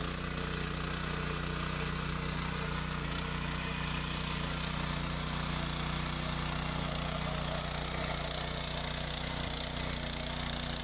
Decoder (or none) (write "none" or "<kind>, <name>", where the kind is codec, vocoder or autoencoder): none